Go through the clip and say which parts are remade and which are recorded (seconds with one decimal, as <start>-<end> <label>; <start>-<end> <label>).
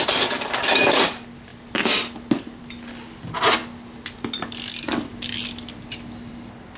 0.0-6.8 recorded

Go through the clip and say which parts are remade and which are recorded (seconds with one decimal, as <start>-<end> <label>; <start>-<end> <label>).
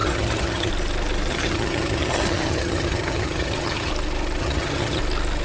0.0-0.7 remade; 0.7-1.3 recorded; 1.3-3.9 remade; 3.9-4.4 recorded; 4.4-5.0 remade; 5.0-5.4 recorded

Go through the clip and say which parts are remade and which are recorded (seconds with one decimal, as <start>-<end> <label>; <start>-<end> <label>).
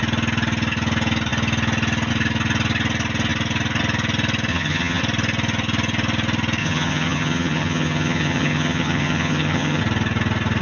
0.0-4.5 recorded; 4.5-5.0 remade; 5.0-6.6 recorded; 6.6-9.8 remade; 9.8-10.6 recorded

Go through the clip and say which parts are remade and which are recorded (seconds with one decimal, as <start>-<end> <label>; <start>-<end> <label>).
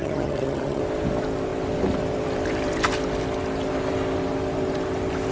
0.0-0.8 remade; 0.8-5.3 recorded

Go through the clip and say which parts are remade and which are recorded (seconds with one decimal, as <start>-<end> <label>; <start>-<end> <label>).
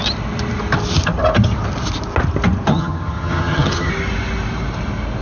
0.0-2.7 recorded; 2.7-3.9 remade; 3.9-5.2 recorded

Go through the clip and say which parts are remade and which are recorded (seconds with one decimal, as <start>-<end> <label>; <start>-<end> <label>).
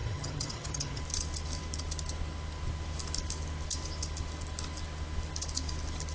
0.0-1.0 remade; 1.0-6.1 recorded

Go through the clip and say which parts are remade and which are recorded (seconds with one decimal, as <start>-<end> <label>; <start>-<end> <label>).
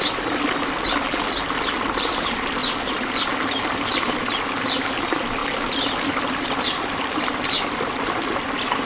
0.0-8.9 recorded